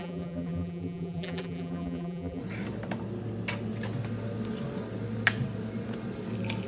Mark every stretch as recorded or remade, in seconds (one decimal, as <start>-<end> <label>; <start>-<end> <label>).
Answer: 0.0-2.4 remade; 2.4-6.7 recorded